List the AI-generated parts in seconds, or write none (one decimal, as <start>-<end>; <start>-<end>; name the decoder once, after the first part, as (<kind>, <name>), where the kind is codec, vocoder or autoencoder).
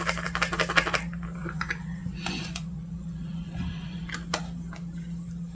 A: 1.4-4.0 (vocoder, Vocos)